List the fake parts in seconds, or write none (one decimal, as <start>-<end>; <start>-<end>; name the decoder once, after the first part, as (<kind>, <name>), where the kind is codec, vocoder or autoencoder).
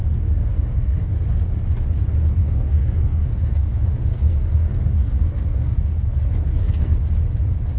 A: 0.0-1.1 (codec, SNAC); 2.4-7.0